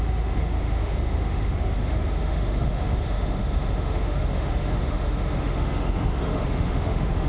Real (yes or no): no